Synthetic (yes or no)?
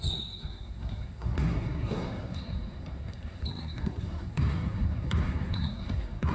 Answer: yes